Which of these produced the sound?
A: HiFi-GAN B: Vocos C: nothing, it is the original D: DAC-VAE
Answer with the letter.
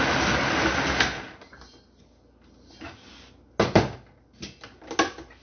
C